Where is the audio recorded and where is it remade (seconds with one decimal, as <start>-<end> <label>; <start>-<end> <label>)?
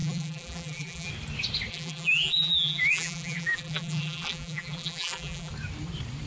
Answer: 0.0-1.1 remade; 1.1-1.7 recorded; 1.7-5.5 remade; 5.5-6.3 recorded